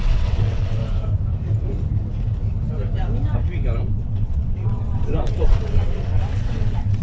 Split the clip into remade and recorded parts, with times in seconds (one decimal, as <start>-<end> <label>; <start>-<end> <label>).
0.0-0.8 remade; 0.8-3.8 recorded; 3.8-7.0 remade